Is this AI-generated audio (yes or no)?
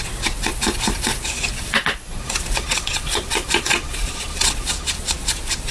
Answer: yes